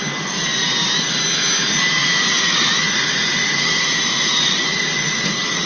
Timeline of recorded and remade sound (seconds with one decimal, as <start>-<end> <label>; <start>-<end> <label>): 0.0-2.0 recorded; 2.0-5.7 remade